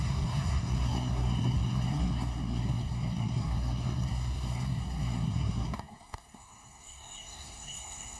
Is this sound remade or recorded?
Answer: remade